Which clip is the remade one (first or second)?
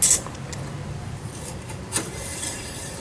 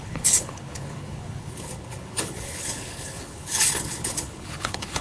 second